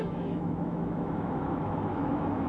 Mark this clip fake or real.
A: fake